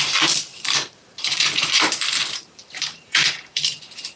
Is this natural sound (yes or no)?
no